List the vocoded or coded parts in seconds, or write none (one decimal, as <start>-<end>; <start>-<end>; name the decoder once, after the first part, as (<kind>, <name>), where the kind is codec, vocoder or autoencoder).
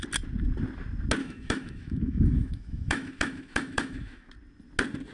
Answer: 1.2-4.3 (autoencoder, DAC-VAE)